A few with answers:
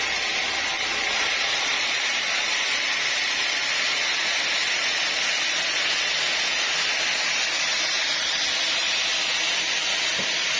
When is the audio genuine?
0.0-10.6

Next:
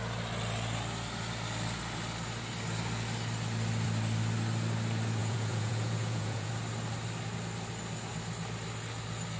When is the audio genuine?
0.0-5.2; 6.5-9.4

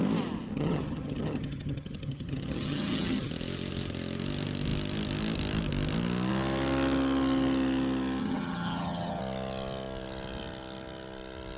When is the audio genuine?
0.0-0.5; 3.3-8.2; 9.2-11.6

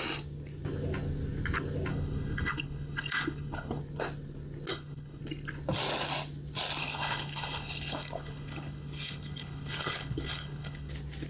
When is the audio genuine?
0.0-1.9; 3.8-4.7; 5.2-6.8; 10.9-11.3

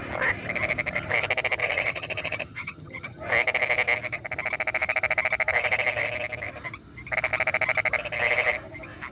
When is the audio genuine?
0.0-1.6; 3.2-9.1

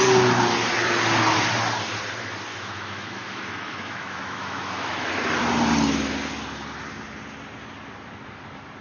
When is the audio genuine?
0.0-2.5; 5.1-8.8